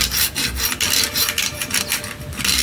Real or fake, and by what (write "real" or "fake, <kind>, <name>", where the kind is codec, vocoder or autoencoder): real